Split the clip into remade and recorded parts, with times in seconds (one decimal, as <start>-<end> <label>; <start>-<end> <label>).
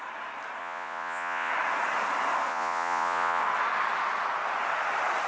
0.0-0.6 recorded; 0.6-1.5 remade; 1.5-2.5 recorded; 2.5-3.4 remade; 3.4-5.3 recorded